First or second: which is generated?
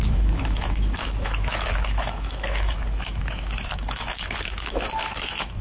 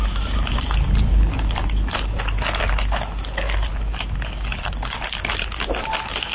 first